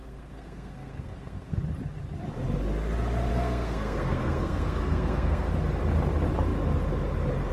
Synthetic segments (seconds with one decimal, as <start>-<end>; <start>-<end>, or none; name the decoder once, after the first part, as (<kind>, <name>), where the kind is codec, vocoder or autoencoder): 0.0-1.6 (codec, SNAC); 3.3-5.5